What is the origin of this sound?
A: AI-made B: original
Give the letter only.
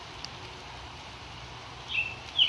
B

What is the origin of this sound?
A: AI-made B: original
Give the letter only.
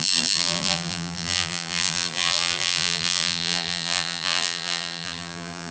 A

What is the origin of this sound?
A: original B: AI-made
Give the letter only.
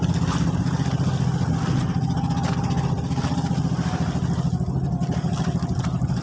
A